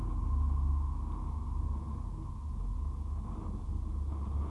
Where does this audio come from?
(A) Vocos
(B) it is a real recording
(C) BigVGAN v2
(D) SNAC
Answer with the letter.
B